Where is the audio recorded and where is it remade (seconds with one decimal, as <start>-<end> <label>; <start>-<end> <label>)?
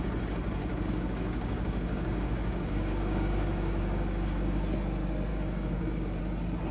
0.0-0.6 recorded; 0.6-4.6 remade; 4.6-5.3 recorded; 5.3-6.2 remade; 6.2-6.7 recorded